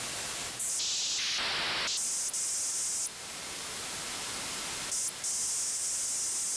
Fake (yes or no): no